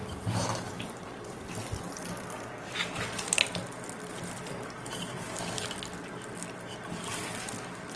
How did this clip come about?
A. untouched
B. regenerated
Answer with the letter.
A